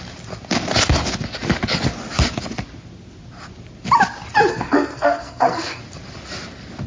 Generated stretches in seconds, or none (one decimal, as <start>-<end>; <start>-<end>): 4.5-5.8